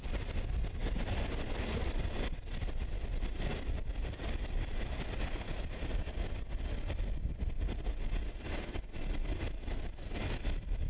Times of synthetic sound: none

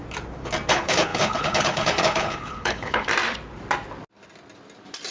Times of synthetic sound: 0.7-3.1 (codec, HILCodec)

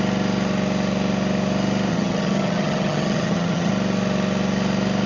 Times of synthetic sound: 1.9-3.7 (vocoder, HiFi-GAN)

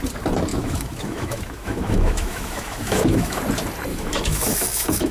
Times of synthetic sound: 0.5-3.4 (autoencoder, DAC-VAE); 3.9-5.1